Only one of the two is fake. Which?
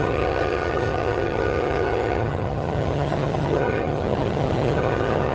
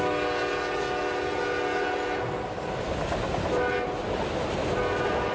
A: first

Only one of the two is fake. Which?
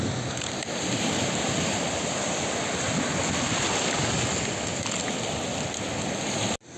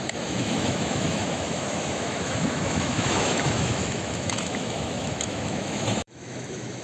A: second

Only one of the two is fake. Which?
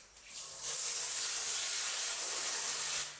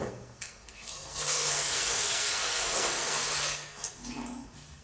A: second